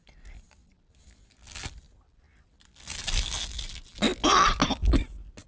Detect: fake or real real